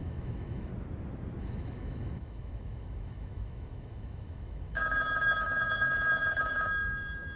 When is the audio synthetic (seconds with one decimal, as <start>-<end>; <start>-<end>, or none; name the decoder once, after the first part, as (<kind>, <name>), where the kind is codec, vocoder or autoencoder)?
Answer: 0.0-0.7 (autoencoder, DAC-VAE); 1.4-7.4